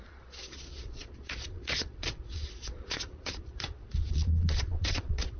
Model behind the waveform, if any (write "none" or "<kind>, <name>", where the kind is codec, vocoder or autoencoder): vocoder, Vocos